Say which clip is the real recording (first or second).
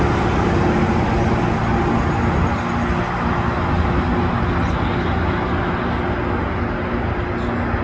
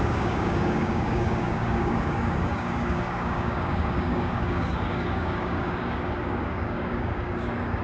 first